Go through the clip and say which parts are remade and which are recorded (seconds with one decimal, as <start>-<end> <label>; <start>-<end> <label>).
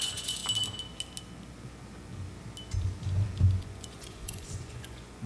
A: 0.0-0.4 remade; 0.4-3.6 recorded; 3.6-5.3 remade